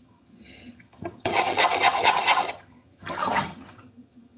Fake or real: fake